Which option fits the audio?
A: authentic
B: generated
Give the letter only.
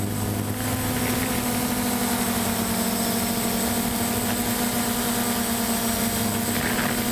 A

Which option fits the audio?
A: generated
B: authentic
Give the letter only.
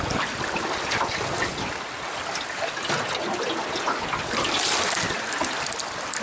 B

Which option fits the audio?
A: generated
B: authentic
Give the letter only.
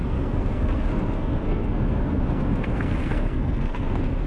A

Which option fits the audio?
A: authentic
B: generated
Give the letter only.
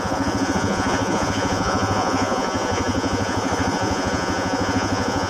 B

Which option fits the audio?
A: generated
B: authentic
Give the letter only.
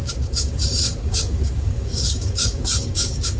A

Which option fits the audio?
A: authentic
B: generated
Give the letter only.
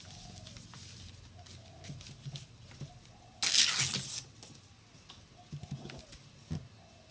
A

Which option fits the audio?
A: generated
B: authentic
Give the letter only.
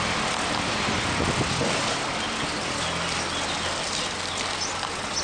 B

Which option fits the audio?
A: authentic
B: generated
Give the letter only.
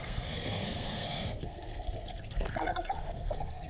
B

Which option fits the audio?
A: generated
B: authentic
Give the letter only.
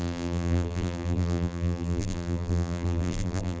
A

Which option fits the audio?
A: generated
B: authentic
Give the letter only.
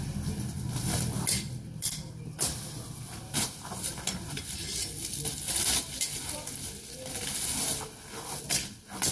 B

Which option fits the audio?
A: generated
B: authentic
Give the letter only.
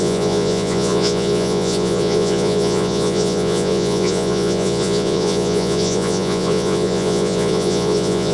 A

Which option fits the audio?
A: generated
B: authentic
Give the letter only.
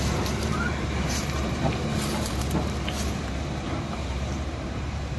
A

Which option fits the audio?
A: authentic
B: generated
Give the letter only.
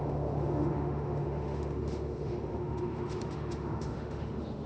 B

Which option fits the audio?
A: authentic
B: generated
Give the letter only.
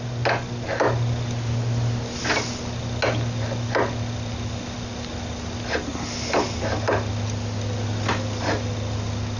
A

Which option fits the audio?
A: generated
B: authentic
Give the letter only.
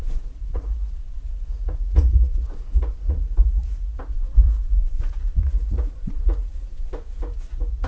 A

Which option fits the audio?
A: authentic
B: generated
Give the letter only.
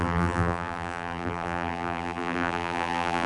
B